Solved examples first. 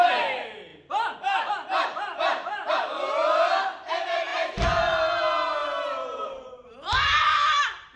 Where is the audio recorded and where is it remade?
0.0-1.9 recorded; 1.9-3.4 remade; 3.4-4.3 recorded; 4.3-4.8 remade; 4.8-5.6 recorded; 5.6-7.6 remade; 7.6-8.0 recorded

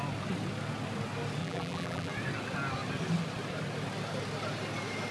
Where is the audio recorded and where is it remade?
0.0-1.4 recorded; 1.4-2.1 remade; 2.1-5.1 recorded